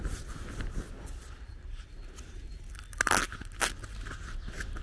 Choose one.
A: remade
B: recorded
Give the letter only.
B